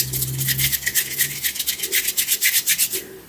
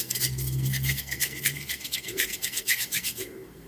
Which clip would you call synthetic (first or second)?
second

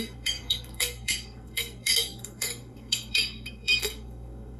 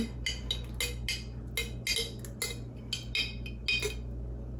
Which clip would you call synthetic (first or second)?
first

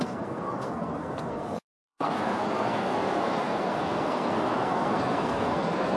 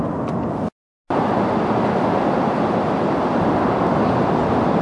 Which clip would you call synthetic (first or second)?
first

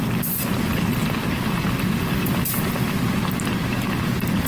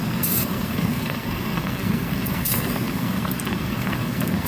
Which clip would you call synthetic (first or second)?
second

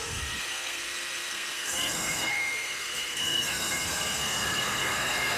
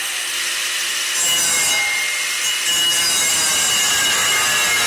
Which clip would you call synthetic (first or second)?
first